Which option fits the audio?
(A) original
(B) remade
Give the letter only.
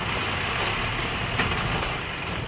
B